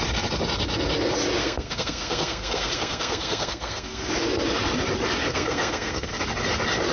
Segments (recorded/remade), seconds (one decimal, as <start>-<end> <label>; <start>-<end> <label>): 0.0-1.4 recorded; 1.4-4.1 remade; 4.1-5.3 recorded; 5.3-6.2 remade; 6.2-6.9 recorded